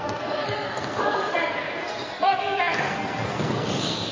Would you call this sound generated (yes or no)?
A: yes